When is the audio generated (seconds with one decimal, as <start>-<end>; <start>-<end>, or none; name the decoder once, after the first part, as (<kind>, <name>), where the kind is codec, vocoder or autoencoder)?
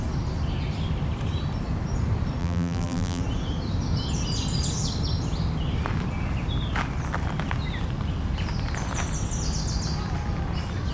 2.4-3.2 (vocoder, BigVGAN v2)